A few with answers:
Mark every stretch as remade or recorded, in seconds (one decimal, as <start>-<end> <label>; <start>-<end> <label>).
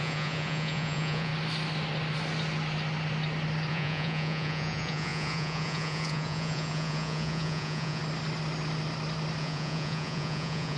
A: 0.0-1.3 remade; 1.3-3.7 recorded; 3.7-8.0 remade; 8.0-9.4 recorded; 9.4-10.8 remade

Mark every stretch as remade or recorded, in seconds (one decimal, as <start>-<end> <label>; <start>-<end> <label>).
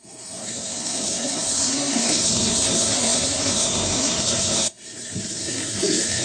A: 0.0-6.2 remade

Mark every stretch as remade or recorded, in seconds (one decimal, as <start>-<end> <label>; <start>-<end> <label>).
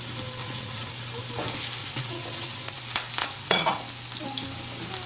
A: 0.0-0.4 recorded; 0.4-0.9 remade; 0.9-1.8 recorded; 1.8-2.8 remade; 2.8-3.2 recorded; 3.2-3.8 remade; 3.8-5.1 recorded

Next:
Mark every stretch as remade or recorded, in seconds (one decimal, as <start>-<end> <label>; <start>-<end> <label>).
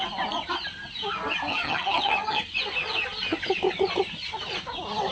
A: 0.0-1.5 recorded; 1.5-2.4 remade; 2.4-5.1 recorded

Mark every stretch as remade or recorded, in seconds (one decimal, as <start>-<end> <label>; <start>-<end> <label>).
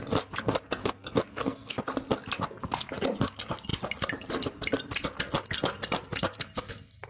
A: 0.0-0.8 recorded; 0.8-1.8 remade; 1.8-7.1 recorded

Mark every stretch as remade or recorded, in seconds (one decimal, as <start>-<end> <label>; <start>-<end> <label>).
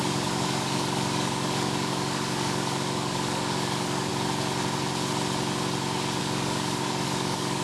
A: 0.0-4.1 remade; 4.1-6.2 recorded; 6.2-7.6 remade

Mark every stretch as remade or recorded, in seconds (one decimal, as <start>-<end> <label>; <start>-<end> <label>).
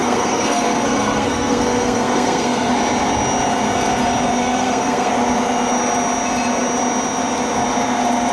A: 0.0-2.7 remade; 2.7-4.4 recorded; 4.4-5.1 remade; 5.1-8.3 recorded